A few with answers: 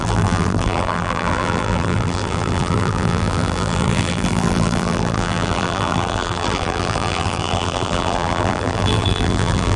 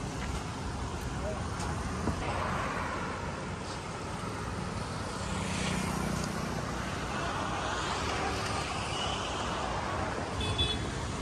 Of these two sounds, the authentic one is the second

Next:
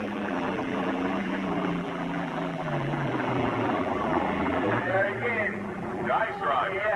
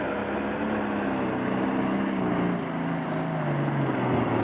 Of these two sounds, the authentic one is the second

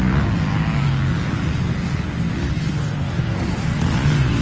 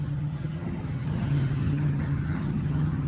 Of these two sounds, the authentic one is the first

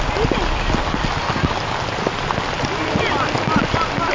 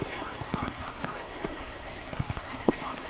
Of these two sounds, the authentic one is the first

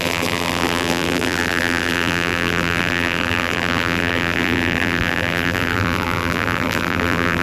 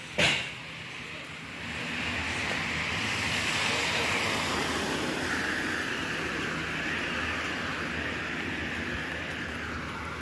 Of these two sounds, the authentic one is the second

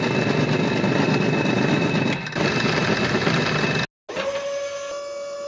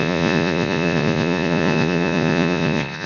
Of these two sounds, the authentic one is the first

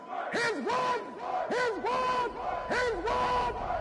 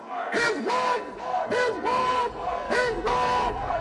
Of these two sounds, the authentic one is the first